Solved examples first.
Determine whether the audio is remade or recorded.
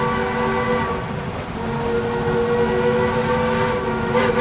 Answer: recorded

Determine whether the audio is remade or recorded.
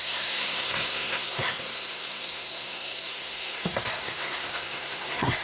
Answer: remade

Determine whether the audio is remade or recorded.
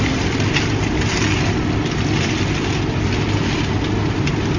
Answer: recorded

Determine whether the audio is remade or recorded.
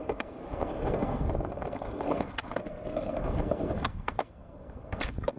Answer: remade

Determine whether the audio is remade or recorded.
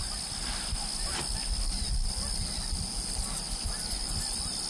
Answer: recorded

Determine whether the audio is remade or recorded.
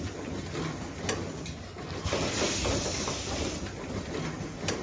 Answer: recorded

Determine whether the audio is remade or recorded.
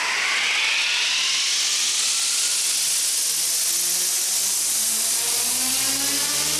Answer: recorded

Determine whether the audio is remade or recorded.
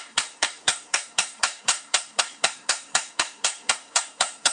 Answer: remade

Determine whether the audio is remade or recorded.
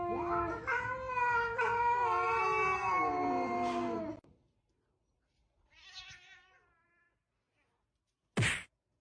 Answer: recorded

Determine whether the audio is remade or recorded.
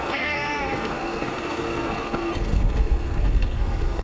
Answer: remade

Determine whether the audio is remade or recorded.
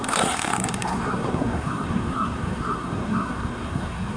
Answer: remade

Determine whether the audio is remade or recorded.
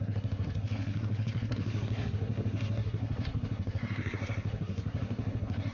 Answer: remade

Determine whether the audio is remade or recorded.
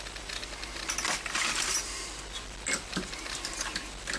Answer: recorded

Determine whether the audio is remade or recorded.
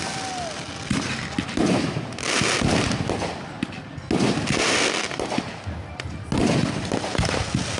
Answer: recorded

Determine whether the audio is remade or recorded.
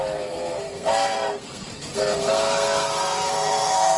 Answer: remade